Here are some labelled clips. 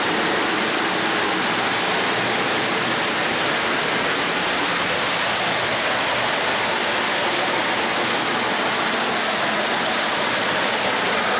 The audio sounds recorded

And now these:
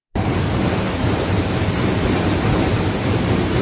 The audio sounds remade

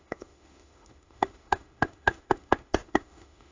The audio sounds remade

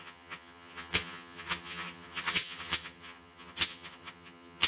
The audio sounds remade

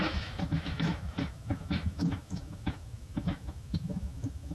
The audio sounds remade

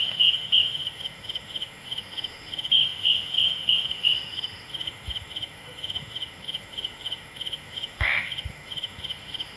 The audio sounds remade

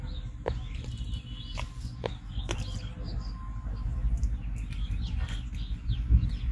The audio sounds recorded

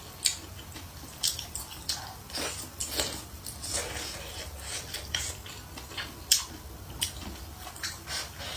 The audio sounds recorded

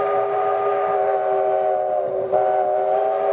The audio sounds recorded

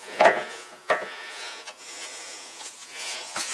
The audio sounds remade